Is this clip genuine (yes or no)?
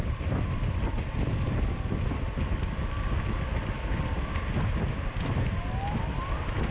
yes